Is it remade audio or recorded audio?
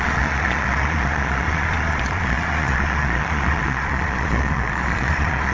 remade